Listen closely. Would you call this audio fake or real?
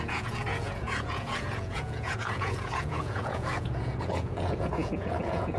fake